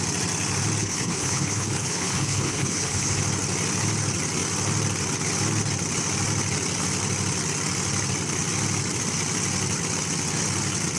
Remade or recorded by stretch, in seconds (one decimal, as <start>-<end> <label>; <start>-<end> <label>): 0.0-0.8 recorded; 0.8-3.2 remade; 3.2-11.0 recorded